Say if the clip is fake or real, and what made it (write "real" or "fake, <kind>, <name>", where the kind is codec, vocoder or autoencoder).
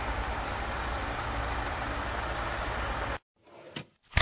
real